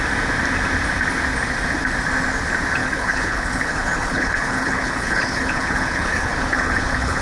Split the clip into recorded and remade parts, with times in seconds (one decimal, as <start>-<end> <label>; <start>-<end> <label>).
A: 0.0-2.8 recorded; 2.8-7.2 remade